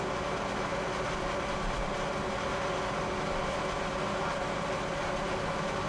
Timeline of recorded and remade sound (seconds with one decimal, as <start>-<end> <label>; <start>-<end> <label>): 0.0-5.9 recorded